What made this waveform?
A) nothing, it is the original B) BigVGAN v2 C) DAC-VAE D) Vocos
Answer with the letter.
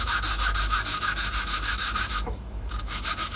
C